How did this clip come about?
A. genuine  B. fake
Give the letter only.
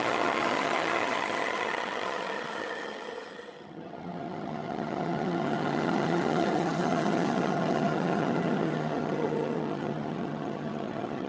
B